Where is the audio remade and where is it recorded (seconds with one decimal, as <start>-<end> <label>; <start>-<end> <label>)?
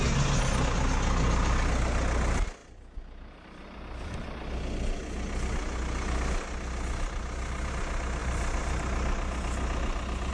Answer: 0.0-10.3 recorded